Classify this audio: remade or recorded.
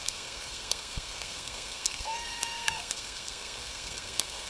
remade